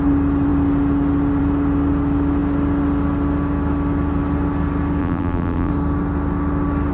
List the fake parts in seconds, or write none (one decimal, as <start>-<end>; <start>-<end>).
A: 5.0-5.7